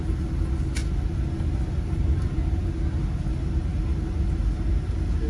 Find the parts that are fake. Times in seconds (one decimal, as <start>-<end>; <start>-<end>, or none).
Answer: none